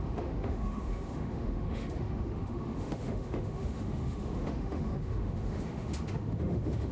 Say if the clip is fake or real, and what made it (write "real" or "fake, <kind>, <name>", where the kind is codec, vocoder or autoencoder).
fake, autoencoder, DAC-VAE